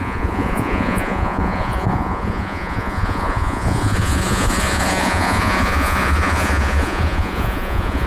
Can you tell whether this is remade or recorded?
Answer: remade